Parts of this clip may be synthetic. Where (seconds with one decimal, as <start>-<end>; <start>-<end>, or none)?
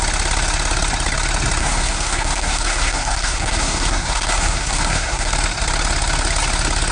1.6-5.3